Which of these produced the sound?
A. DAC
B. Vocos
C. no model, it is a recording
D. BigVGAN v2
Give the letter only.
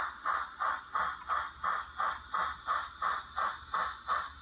C